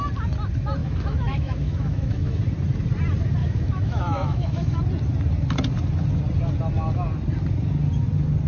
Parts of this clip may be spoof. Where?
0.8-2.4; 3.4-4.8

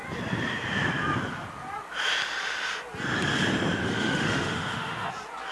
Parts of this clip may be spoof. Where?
3.8-5.1